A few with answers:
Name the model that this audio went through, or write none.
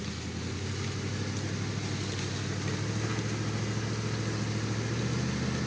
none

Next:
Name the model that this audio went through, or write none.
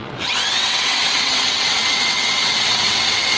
vocoder, WaveNeXt